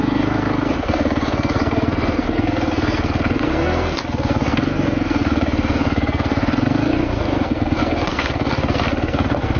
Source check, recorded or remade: remade